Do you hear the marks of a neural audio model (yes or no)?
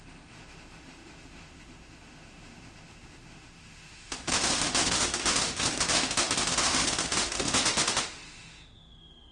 yes